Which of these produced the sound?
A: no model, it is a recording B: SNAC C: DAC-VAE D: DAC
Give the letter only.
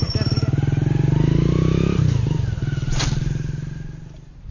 A